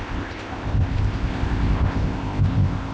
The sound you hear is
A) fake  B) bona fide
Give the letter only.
A